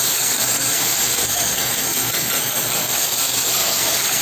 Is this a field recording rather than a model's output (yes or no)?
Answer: no